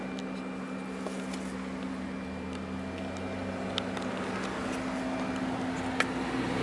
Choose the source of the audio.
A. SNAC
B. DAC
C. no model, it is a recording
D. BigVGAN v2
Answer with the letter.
C